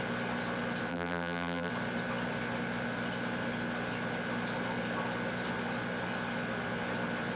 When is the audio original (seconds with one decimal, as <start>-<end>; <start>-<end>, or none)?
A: 0.0-0.9; 1.7-7.4